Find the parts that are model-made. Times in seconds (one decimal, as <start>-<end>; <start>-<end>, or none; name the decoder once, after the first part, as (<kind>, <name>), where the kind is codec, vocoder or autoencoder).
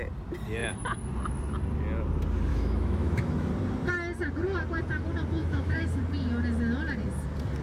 2.5-3.5 (autoencoder, DAC-VAE); 5.4-6.0